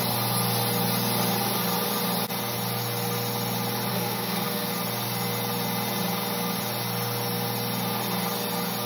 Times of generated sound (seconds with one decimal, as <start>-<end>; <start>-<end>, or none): 3.9-4.7

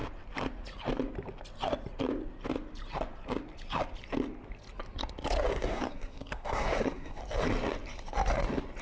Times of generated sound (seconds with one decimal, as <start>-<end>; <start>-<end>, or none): 5.5-7.2